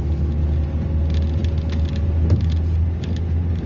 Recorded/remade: recorded